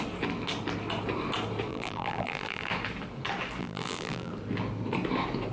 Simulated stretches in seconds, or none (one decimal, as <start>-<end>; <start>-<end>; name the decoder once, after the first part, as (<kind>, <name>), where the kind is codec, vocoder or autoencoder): 1.7-2.7 (vocoder, BigVGAN v2); 3.6-4.3